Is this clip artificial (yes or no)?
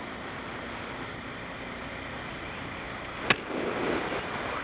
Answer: no